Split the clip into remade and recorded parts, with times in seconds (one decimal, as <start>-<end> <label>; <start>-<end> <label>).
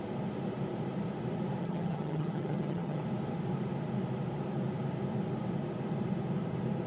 0.0-1.6 recorded; 1.6-3.0 remade; 3.0-6.9 recorded